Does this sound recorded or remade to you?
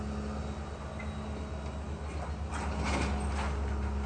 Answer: recorded